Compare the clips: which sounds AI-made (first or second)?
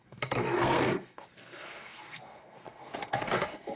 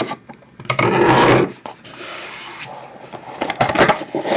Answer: first